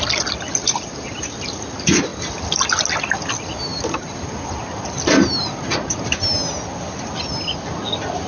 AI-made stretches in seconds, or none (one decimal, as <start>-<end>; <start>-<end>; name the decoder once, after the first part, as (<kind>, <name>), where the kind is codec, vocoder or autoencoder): 0.5-1.2 (vocoder, BigVGAN v2); 3.7-4.3